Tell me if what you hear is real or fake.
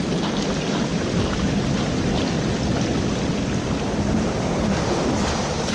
real